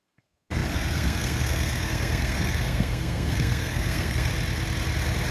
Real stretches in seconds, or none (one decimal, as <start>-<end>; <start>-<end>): 4.3-5.3